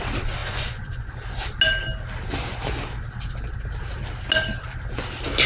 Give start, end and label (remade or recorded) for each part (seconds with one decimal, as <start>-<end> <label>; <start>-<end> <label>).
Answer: 0.0-0.4 recorded; 0.4-1.1 remade; 1.1-5.5 recorded

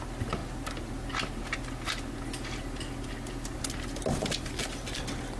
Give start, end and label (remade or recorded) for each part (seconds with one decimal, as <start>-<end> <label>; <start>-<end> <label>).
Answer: 0.0-5.4 recorded

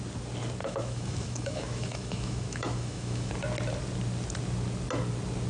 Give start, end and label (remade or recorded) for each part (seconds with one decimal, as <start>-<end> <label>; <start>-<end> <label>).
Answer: 0.0-0.6 recorded; 0.6-3.3 remade; 3.3-5.5 recorded

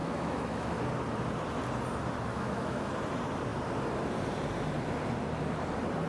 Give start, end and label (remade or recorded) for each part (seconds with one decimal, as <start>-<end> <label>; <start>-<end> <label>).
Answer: 0.0-0.8 remade; 0.8-2.3 recorded; 2.3-2.9 remade; 2.9-6.1 recorded

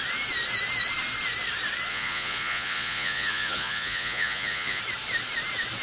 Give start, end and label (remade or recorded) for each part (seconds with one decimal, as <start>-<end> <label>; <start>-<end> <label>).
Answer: 0.0-1.9 recorded; 1.9-4.8 remade; 4.8-5.8 recorded